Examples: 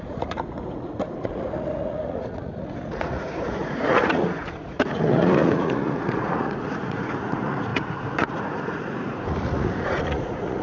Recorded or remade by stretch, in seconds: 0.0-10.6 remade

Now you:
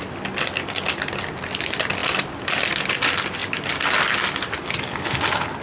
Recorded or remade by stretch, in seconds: 0.0-5.6 recorded

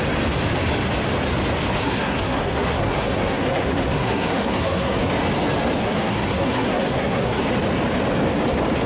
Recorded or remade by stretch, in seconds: 0.0-1.8 recorded; 1.8-5.1 remade; 5.1-5.8 recorded; 5.8-7.4 remade; 7.4-8.9 recorded

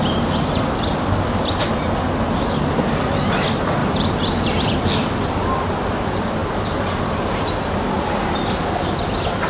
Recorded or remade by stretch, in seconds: 0.0-3.8 recorded; 3.8-4.8 remade; 4.8-9.5 recorded

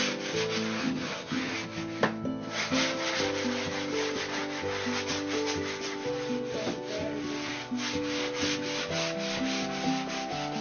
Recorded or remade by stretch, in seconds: 0.0-0.8 recorded; 0.8-1.5 remade; 1.5-10.6 recorded

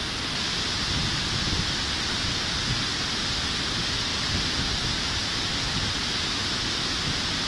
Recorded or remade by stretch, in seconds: 0.0-7.5 recorded